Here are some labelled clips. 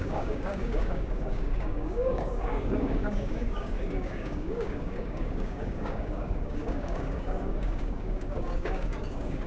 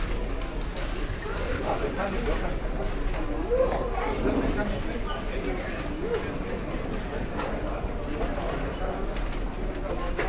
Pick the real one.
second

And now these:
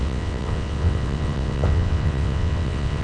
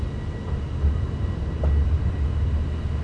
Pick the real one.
second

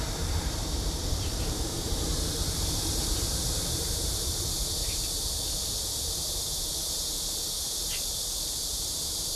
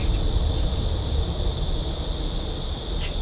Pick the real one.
second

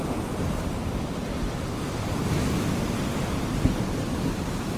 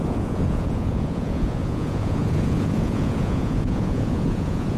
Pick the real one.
first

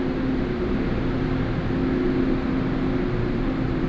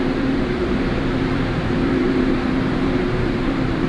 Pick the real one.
first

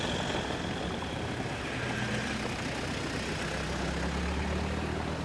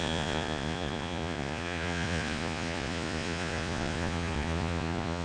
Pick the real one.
first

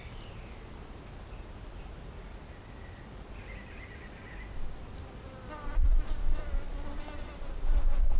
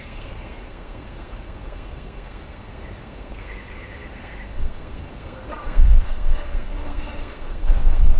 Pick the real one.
first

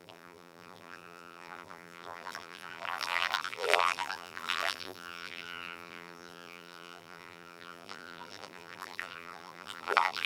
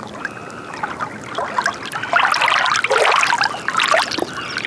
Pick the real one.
second